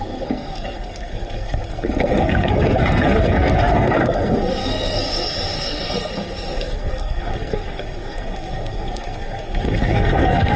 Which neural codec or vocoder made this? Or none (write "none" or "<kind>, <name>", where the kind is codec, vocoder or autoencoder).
codec, SNAC